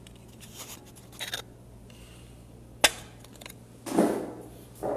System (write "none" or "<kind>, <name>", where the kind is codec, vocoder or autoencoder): none